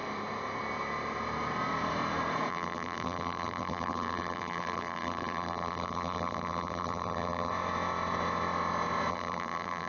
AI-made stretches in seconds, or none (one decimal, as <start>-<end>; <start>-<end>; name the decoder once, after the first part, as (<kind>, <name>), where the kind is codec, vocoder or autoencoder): 2.5-7.5 (vocoder, BigVGAN v2); 9.1-9.9